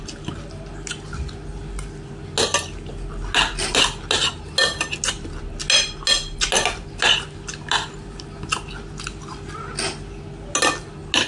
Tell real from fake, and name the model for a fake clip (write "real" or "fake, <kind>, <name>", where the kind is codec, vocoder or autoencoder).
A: real